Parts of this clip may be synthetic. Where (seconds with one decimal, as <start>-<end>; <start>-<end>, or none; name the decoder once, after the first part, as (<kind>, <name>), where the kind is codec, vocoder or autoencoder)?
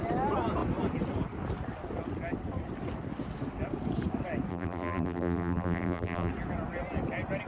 4.5-6.3 (vocoder, BigVGAN v2)